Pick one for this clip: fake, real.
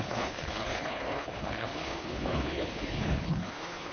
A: fake